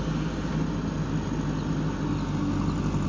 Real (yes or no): yes